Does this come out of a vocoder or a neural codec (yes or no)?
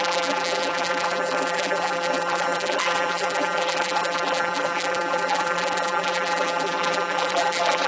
yes